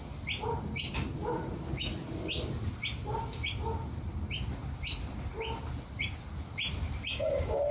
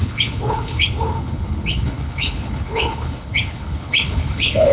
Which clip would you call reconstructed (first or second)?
second